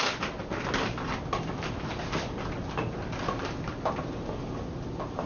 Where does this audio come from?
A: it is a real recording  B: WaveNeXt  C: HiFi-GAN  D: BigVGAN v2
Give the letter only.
A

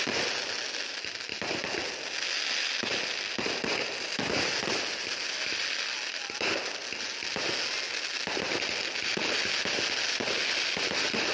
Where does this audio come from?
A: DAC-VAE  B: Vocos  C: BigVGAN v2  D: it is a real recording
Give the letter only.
D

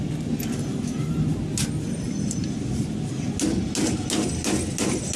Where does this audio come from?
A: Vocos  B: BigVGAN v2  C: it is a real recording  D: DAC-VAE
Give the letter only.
C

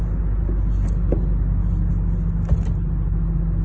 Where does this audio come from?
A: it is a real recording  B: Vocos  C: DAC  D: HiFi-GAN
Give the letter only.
A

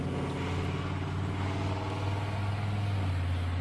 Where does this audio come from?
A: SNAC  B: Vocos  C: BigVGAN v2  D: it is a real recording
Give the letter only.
D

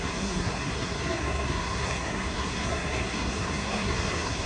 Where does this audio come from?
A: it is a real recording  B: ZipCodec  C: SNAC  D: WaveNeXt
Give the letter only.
C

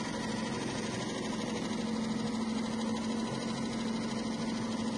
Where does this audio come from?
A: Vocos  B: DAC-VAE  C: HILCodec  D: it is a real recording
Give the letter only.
D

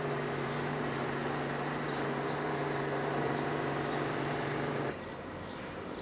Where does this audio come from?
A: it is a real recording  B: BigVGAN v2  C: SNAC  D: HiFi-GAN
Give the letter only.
B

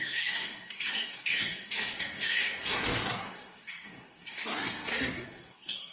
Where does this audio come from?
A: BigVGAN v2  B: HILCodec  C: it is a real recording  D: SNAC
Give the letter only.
D